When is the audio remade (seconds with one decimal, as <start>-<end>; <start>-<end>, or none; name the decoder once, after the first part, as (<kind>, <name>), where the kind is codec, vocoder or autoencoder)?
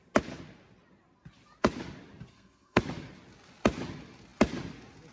2.3-2.8 (codec, SNAC)